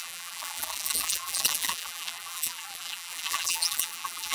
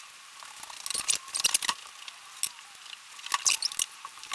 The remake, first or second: first